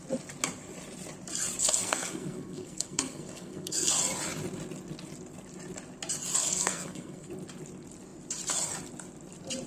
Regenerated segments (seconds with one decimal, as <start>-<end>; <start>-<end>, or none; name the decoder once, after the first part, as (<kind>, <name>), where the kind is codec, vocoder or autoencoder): 1.6-3.9 (codec, SNAC); 6.4-7.3